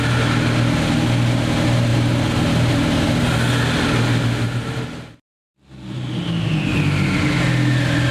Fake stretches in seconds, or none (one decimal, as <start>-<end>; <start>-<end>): none